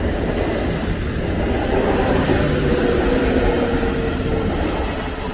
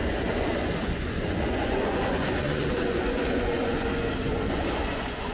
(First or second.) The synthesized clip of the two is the second